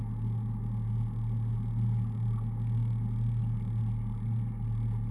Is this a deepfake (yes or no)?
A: no